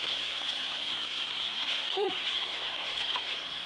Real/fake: fake